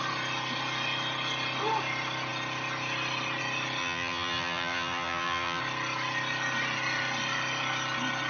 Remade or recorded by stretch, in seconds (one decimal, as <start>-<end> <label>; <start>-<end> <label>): 0.0-3.8 recorded; 3.8-5.6 remade; 5.6-8.3 recorded